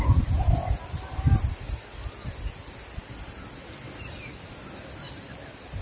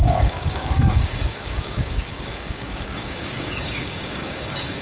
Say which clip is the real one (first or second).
first